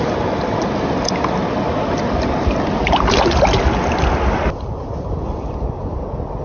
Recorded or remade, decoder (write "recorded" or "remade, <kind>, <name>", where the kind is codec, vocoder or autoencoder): recorded